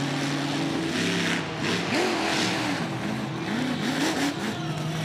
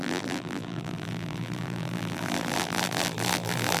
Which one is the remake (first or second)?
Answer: second